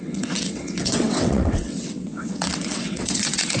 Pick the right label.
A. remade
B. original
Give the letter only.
A